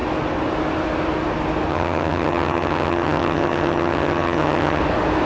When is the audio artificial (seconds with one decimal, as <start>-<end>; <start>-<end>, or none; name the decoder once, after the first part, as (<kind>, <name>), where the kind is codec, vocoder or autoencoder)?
1.7-4.8 (vocoder, HiFi-GAN)